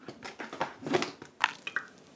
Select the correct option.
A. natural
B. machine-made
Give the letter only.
A